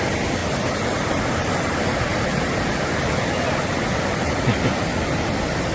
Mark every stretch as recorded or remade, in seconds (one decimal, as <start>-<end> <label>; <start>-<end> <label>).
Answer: 0.0-5.7 recorded